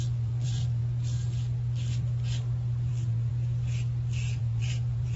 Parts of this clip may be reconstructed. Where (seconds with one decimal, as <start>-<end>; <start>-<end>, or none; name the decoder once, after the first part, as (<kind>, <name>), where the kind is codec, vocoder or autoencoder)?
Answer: 0.0-0.8 (vocoder, BigVGAN v2); 2.9-3.3; 4.4-5.2